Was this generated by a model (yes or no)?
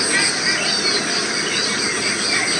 no